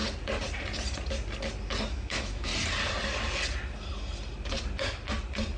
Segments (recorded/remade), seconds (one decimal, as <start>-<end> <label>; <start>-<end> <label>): 0.0-1.9 recorded; 1.9-2.5 remade; 2.5-5.6 recorded